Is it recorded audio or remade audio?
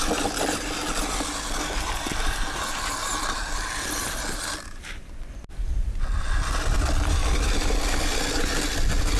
recorded